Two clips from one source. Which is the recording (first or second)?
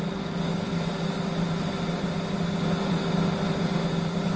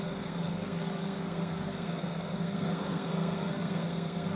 first